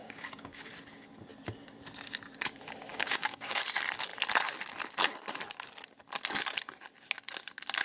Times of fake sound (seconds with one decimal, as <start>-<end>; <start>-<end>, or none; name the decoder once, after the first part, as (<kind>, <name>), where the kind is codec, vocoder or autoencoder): 0.0-0.7 (codec, DAC); 2.9-3.6